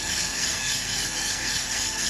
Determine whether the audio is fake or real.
fake